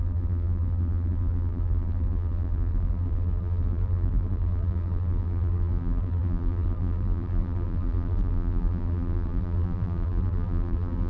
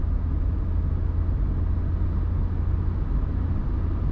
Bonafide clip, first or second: second